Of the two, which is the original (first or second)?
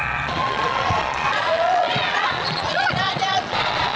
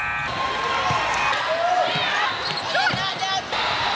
second